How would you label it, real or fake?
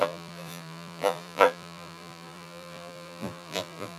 fake